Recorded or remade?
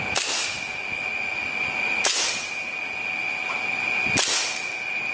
recorded